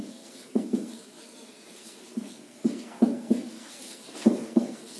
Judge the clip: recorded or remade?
remade